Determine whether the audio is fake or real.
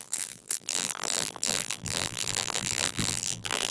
fake